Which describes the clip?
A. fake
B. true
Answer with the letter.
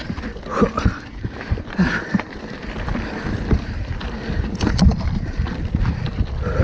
A